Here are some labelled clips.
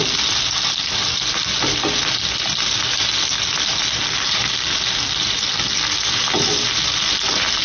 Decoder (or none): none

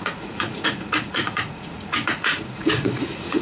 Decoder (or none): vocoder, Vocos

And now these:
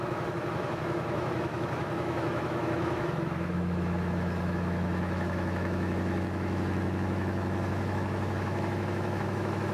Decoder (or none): autoencoder, DAC-VAE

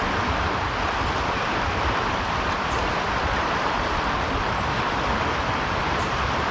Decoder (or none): none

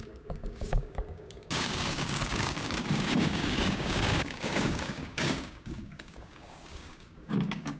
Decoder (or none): codec, DAC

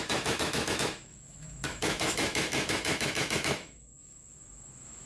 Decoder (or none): autoencoder, DAC-VAE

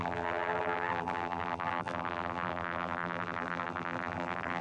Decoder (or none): vocoder, BigVGAN v2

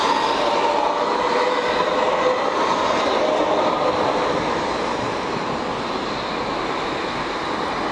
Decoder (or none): none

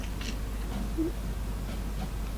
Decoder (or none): none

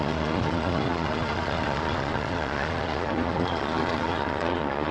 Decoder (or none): vocoder, Vocos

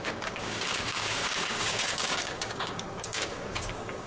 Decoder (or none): codec, DAC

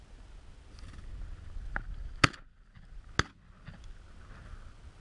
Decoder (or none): none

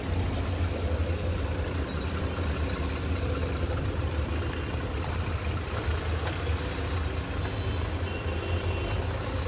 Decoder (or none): none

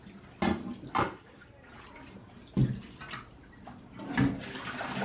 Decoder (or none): none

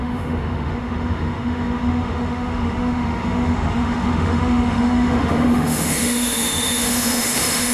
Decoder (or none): autoencoder, DAC-VAE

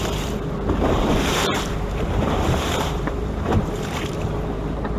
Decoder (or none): vocoder, BigVGAN v2